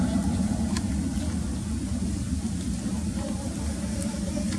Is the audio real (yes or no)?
yes